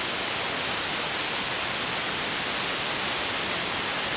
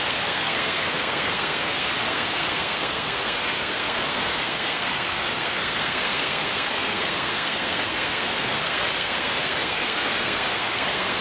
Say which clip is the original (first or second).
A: first